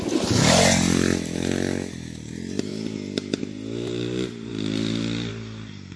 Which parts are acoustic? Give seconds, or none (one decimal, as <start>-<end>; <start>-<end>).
0.0-6.0